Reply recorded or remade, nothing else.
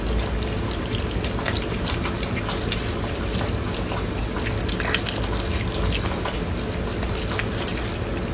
recorded